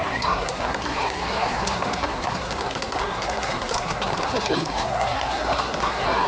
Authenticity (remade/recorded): remade